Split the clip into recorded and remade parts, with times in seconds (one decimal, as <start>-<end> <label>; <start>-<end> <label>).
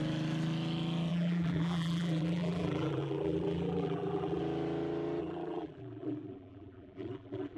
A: 0.0-1.1 recorded; 1.1-4.4 remade; 4.4-5.2 recorded; 5.2-7.6 remade